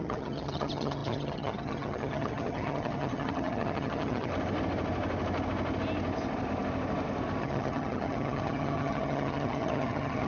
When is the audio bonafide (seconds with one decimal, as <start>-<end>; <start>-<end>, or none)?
4.3-7.4